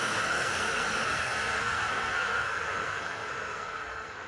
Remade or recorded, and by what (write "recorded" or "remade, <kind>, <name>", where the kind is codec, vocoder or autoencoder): remade, codec, SNAC